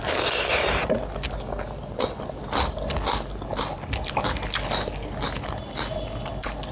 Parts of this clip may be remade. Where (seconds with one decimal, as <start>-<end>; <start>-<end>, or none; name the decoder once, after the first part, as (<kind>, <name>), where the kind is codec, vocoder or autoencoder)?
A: none